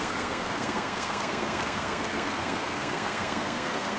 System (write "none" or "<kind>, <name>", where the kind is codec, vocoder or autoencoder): codec, SNAC